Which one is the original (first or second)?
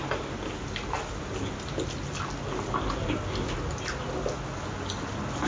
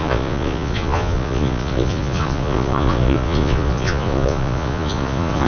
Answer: first